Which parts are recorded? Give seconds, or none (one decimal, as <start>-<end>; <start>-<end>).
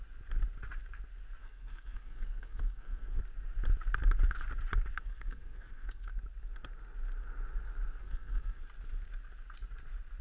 0.0-1.4; 3.2-5.0; 6.1-8.0; 8.6-10.2